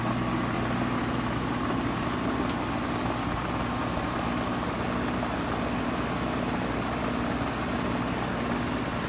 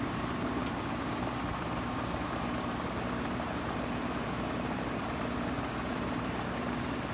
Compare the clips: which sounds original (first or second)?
first